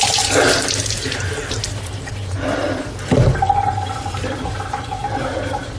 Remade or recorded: remade